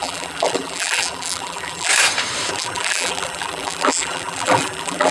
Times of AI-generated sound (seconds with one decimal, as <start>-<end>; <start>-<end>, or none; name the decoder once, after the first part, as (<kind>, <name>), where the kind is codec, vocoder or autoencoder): 0.0-1.9 (vocoder, BigVGAN v2); 2.5-5.1